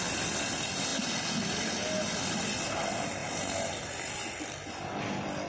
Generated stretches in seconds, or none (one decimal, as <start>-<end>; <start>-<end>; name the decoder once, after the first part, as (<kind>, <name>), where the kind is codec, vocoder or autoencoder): none